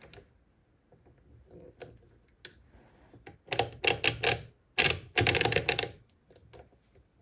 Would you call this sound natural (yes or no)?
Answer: yes